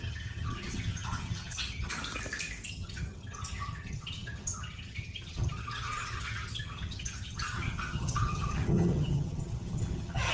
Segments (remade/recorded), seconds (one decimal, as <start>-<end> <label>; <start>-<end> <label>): 0.0-1.9 remade; 1.9-2.7 recorded; 2.7-10.3 remade

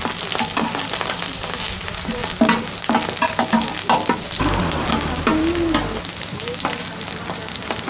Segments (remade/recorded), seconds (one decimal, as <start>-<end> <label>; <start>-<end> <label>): 0.0-2.2 remade; 2.2-4.6 recorded; 4.6-5.3 remade; 5.3-7.2 recorded; 7.2-7.9 remade